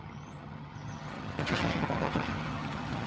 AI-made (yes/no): yes